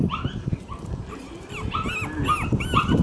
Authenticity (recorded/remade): recorded